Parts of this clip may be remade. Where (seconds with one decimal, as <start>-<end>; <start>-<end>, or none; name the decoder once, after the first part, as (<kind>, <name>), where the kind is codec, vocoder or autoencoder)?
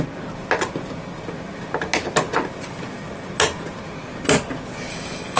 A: 4.9-5.4 (autoencoder, DAC-VAE)